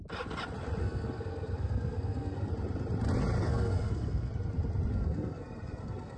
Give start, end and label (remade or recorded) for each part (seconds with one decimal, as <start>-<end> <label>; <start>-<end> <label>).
0.0-0.8 recorded; 0.8-2.5 remade; 2.5-3.4 recorded; 3.4-4.3 remade; 4.3-4.9 recorded; 4.9-6.2 remade